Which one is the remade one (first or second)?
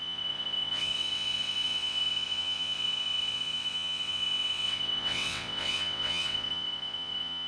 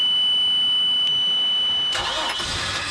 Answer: first